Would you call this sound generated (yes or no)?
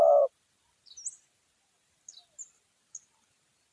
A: no